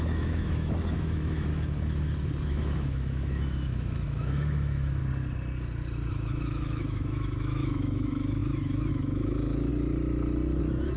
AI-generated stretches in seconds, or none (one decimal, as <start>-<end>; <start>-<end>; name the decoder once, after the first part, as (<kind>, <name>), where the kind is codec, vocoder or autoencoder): 0.0-1.5 (autoencoder, DAC-VAE); 2.5-5.0; 6.1-9.7; 10.6-11.0